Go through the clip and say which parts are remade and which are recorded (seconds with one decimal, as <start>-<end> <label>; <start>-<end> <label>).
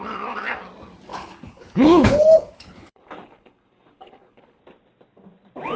0.0-1.1 recorded; 1.1-4.6 remade; 4.6-5.8 recorded